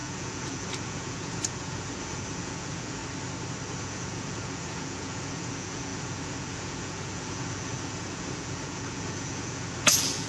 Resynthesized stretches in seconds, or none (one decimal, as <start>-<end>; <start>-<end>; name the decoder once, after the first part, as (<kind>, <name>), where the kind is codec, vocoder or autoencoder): 0.0-3.0 (vocoder, Vocos); 3.8-10.3